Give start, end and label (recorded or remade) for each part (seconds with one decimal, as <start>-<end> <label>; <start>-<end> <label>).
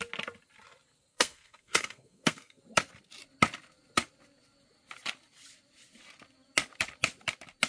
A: 0.0-1.1 recorded; 1.1-2.6 remade; 2.6-7.7 recorded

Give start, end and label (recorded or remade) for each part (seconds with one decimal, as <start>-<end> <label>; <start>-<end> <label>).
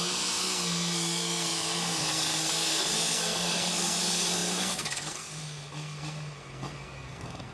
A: 0.0-7.5 remade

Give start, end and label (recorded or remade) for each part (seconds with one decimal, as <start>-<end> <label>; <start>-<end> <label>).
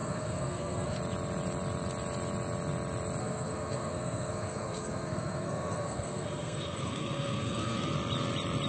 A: 0.0-1.0 remade; 1.0-3.2 recorded; 3.2-7.9 remade; 7.9-8.7 recorded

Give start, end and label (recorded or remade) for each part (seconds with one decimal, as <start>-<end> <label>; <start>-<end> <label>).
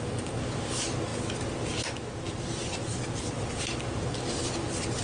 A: 0.0-5.0 recorded